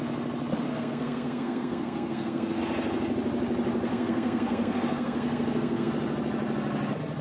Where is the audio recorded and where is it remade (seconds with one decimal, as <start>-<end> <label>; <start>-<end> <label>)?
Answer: 0.0-0.7 recorded; 0.7-2.6 remade; 2.6-3.9 recorded; 3.9-5.9 remade; 5.9-7.2 recorded